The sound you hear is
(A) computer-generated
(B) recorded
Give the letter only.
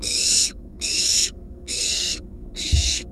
A